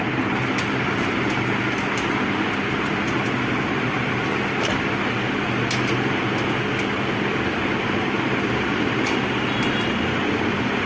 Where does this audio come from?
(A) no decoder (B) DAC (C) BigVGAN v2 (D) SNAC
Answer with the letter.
A